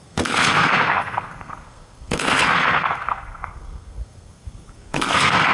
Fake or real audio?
fake